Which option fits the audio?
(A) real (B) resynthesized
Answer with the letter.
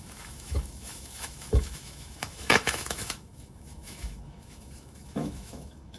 B